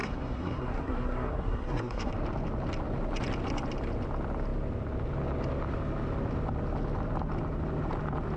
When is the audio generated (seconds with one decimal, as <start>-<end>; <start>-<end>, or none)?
0.0-2.1